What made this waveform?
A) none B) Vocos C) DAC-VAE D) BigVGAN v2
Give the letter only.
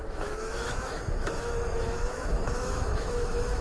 C